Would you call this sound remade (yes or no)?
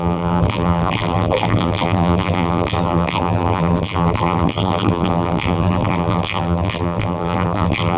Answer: yes